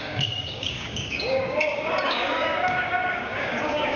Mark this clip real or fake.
fake